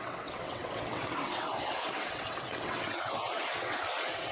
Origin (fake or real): fake